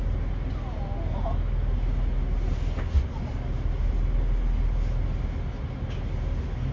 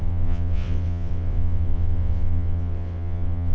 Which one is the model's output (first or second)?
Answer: second